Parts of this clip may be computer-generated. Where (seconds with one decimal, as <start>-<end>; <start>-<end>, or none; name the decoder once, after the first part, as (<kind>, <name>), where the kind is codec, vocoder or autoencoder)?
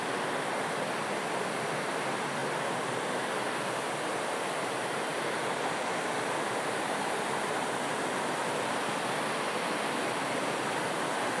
none